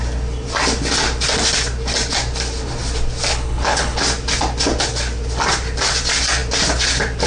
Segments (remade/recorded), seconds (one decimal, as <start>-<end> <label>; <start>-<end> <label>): 0.0-3.3 recorded; 3.3-4.0 remade; 4.0-7.3 recorded